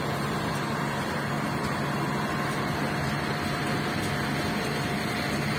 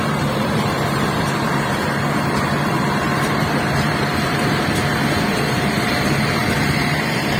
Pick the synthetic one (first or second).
second